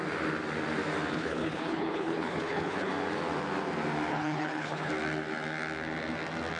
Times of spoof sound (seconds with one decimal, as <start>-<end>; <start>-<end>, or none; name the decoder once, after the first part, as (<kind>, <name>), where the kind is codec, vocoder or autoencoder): 1.1-2.9 (codec, HILCodec); 4.1-4.9